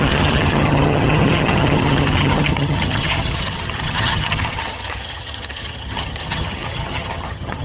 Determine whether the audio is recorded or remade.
remade